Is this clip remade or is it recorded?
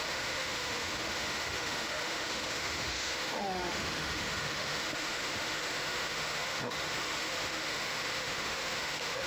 remade